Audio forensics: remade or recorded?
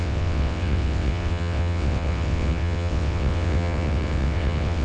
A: remade